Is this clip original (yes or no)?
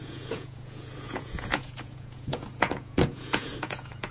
no